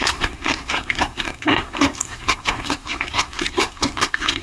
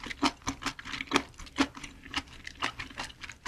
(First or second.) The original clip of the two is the second